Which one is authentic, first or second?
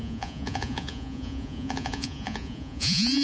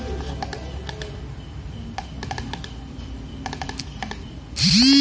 second